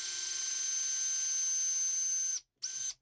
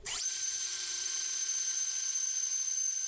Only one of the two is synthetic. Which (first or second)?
second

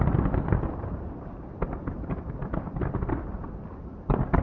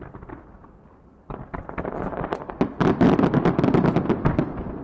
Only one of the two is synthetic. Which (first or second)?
first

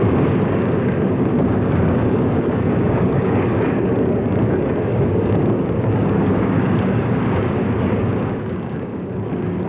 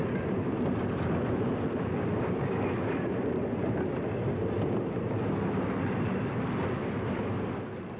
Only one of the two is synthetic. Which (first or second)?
first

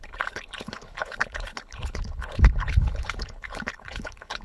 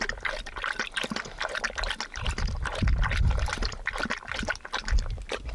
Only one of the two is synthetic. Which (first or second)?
first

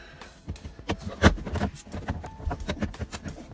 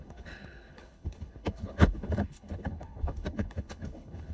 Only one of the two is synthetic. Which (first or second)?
second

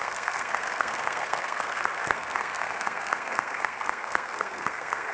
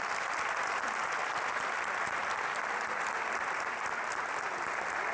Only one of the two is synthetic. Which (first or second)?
first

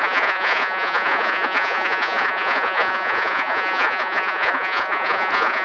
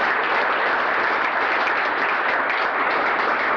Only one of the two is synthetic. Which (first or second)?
first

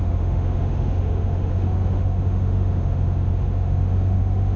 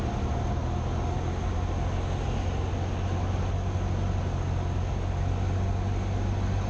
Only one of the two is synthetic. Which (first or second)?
first